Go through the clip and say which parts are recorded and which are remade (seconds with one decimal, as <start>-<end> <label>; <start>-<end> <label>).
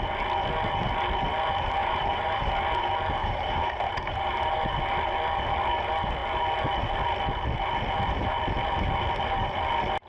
0.0-1.8 recorded; 1.8-2.5 remade; 2.5-3.2 recorded; 3.2-4.8 remade; 4.8-10.1 recorded